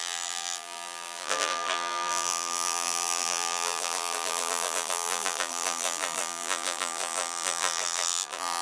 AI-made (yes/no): yes